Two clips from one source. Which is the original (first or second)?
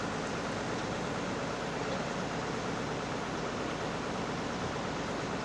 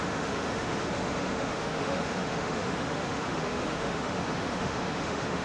first